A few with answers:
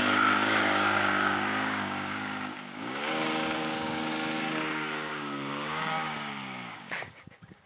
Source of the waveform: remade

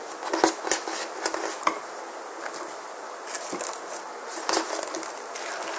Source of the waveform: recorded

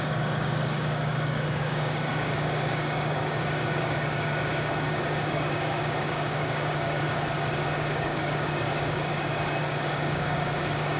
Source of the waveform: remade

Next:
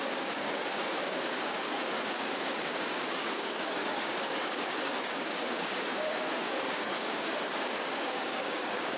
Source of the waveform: remade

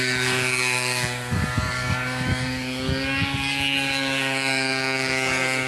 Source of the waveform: remade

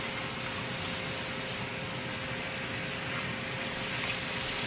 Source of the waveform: recorded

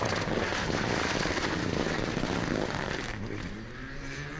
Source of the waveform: recorded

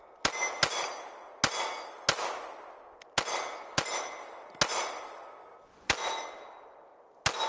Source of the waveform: recorded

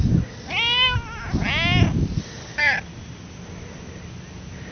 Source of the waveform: recorded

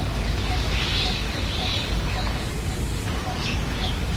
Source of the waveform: remade